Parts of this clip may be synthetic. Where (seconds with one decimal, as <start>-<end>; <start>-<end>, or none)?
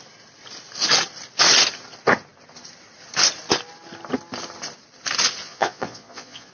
5.4-6.5